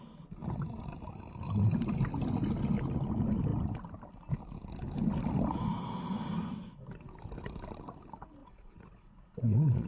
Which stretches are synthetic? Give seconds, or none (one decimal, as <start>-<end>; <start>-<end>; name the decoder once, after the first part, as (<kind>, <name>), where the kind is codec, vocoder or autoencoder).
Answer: 8.4-9.9 (vocoder, Vocos)